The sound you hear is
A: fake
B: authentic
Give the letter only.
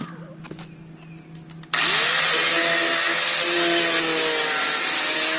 B